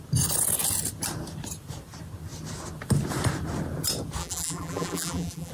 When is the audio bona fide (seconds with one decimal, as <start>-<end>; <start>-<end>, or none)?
0.0-4.2